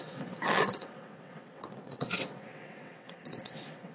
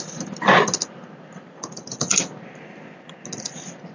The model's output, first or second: first